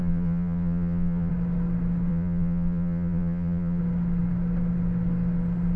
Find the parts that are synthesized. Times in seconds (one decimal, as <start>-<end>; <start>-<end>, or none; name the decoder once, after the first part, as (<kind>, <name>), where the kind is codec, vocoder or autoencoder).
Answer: 0.0-1.3 (vocoder, Vocos); 2.1-3.8